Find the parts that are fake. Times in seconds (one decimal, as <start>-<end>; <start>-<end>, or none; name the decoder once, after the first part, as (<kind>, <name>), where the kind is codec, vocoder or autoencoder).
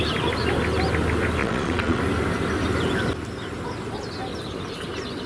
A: 1.4-2.0 (vocoder, Vocos)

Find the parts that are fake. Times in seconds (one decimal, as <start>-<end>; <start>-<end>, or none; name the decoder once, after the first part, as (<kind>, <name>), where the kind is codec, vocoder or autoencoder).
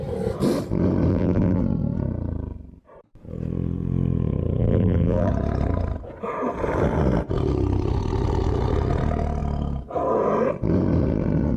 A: 1.1-1.6 (vocoder, BigVGAN v2); 4.6-5.3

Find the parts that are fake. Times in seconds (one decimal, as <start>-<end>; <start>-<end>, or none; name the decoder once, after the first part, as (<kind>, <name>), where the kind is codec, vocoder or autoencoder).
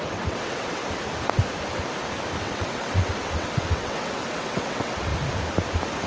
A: 0.0-0.8 (vocoder, WaveNeXt); 2.4-5.1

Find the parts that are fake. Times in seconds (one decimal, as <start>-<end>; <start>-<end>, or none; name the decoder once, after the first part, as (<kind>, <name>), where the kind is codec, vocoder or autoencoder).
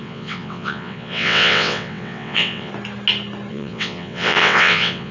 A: 0.0-2.7 (vocoder, WaveNeXt); 3.5-5.1